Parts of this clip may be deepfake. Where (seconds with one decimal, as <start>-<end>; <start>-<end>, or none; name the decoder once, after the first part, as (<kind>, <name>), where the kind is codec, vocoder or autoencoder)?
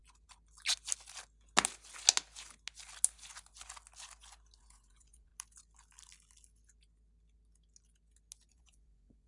4.6-5.3 (vocoder, Vocos); 8.5-9.3